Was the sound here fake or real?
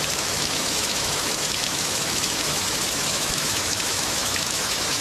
fake